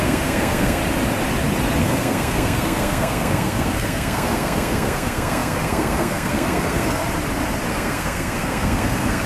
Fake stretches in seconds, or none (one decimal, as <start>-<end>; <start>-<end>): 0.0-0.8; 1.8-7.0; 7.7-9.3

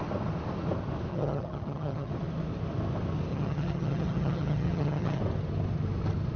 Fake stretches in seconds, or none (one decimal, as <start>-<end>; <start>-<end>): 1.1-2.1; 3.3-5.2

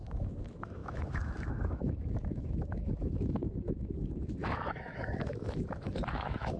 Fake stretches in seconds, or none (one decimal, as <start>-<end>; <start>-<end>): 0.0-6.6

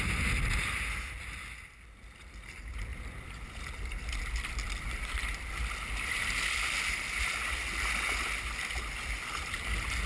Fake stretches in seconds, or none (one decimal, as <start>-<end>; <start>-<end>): none